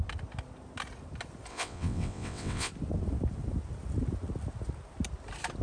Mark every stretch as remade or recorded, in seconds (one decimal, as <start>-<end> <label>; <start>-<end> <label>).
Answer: 0.0-1.5 recorded; 1.5-2.7 remade; 2.7-5.6 recorded